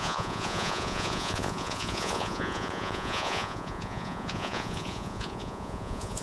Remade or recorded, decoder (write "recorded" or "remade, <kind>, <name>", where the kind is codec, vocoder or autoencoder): remade, vocoder, Vocos